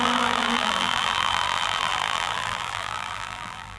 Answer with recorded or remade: remade